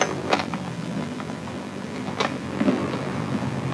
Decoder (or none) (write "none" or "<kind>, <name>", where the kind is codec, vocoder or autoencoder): vocoder, BigVGAN v2